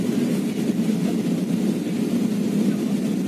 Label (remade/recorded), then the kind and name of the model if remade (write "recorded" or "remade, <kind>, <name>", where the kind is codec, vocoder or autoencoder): recorded